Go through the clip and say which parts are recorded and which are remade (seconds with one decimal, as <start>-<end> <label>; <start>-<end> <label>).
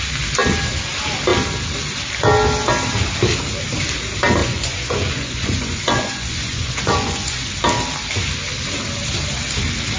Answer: 0.0-4.4 recorded; 4.4-7.5 remade; 7.5-10.0 recorded